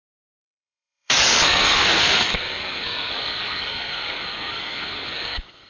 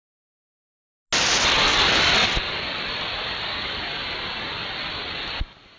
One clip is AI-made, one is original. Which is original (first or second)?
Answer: second